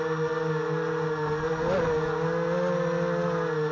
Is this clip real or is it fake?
real